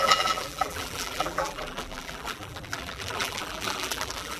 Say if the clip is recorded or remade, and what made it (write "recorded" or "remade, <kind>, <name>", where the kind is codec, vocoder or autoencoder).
remade, vocoder, BigVGAN v2